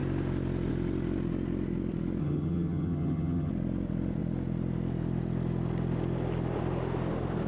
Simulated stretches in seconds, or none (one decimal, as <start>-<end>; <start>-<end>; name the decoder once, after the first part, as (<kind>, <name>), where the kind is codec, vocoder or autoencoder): 2.2-3.5 (vocoder, HiFi-GAN)